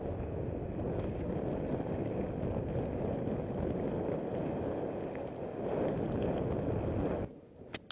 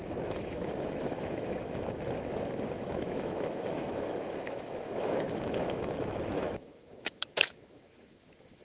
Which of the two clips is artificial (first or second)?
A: second